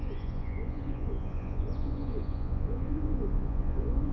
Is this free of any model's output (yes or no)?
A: no